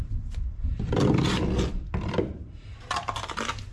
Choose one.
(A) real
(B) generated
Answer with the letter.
B